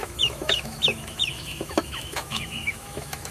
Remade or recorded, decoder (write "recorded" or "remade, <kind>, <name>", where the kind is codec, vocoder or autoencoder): remade, autoencoder, DAC-VAE